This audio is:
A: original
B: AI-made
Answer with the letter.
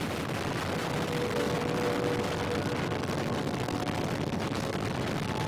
A